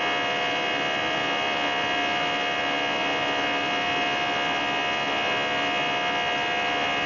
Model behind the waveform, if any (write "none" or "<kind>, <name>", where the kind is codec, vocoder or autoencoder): none